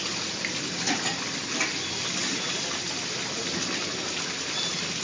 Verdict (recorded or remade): recorded